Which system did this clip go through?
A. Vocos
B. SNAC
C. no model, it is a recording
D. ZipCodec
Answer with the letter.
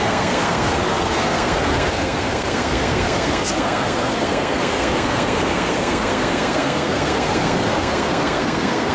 B